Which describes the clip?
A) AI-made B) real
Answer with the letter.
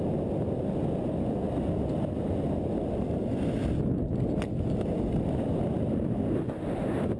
B